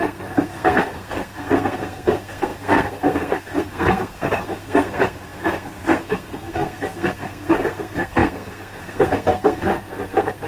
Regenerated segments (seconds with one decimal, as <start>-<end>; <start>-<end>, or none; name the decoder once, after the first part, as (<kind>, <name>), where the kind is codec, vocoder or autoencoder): 0.0-10.5 (codec, SNAC)